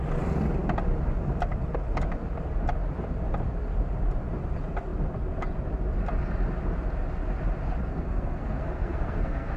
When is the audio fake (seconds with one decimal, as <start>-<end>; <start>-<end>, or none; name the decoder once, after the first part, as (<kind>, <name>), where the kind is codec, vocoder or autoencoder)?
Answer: 7.9-9.6 (codec, SNAC)